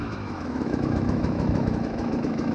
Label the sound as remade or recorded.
remade